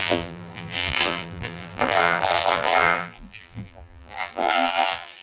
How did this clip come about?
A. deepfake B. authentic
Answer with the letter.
A